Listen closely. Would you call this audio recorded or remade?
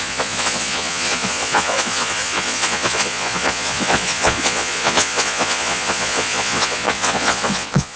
remade